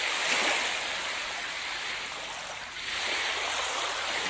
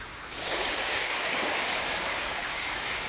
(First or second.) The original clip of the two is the first